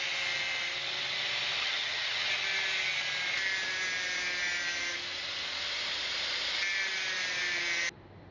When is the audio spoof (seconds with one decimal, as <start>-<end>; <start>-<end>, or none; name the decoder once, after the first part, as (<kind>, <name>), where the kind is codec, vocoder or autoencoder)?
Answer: 1.6-2.3 (vocoder, HiFi-GAN)